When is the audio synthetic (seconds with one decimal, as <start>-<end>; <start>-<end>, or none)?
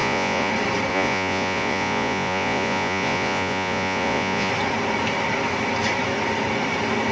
0.0-0.5; 0.9-4.5